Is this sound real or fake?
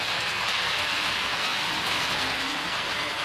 fake